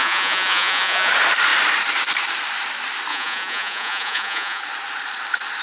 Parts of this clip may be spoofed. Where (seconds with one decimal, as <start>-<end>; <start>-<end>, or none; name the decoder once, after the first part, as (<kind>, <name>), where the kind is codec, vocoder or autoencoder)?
0.0-1.1 (vocoder, Vocos); 3.1-4.6